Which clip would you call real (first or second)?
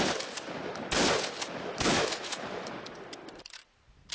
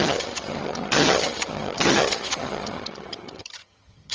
first